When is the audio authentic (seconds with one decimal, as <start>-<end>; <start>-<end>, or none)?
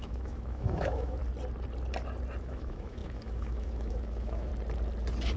1.2-2.4; 4.5-5.4